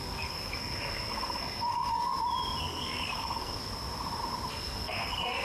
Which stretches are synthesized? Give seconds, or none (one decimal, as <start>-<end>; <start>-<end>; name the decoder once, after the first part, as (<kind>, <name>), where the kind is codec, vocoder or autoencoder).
0.0-2.1 (codec, SNAC); 2.6-3.6; 4.5-5.4